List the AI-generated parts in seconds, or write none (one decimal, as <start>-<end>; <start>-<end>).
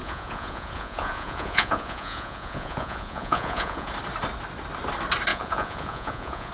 0.0-3.9; 5.3-6.5